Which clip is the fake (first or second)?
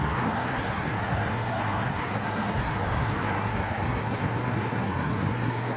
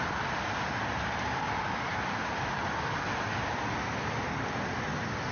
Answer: first